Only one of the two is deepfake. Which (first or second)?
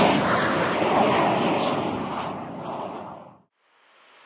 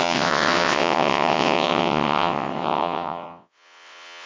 second